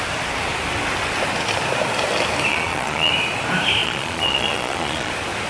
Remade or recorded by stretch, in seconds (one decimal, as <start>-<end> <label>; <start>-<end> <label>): 0.0-2.5 recorded; 2.5-3.1 remade; 3.1-3.8 recorded; 3.8-5.1 remade; 5.1-5.5 recorded